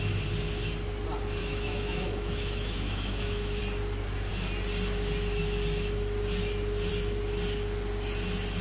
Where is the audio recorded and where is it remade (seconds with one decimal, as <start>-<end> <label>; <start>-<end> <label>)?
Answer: 0.0-1.4 recorded; 1.4-3.6 remade; 3.6-8.6 recorded

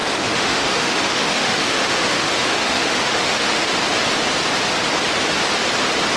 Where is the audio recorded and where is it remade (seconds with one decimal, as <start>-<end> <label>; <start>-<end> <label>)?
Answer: 0.0-3.7 remade; 3.7-6.2 recorded

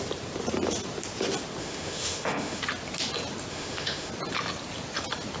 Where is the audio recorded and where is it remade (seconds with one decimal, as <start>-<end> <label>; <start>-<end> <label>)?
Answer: 0.0-1.6 recorded; 1.6-2.6 remade; 2.6-3.5 recorded; 3.5-4.1 remade; 4.1-5.4 recorded

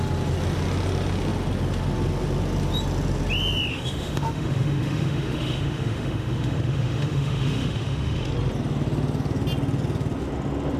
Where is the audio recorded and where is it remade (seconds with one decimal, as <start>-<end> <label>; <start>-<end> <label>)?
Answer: 0.0-3.7 recorded; 3.7-8.3 remade; 8.3-10.8 recorded

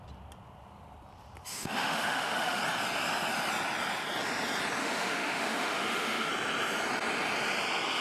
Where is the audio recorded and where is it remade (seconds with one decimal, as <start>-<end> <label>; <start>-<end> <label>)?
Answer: 0.0-1.5 recorded; 1.5-2.6 remade; 2.6-4.8 recorded; 4.8-6.3 remade; 6.3-8.0 recorded

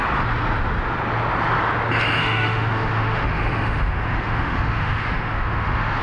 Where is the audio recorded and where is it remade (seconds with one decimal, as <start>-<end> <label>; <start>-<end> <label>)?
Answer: 0.0-2.2 recorded; 2.2-6.0 remade